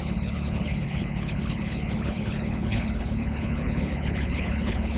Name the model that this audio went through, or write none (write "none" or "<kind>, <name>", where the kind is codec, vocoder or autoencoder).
codec, HILCodec